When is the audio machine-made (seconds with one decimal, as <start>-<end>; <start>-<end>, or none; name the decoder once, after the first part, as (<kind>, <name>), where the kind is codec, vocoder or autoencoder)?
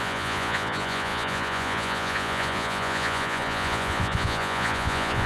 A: 0.0-5.3 (vocoder, Vocos)